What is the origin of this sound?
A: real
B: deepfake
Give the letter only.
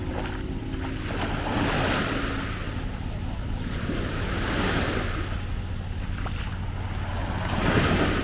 A